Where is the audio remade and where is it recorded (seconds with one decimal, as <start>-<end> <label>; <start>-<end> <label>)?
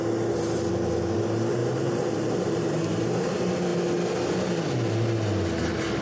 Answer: 0.0-1.6 recorded; 1.6-3.3 remade; 3.3-6.0 recorded